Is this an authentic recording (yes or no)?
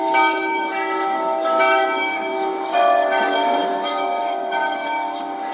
no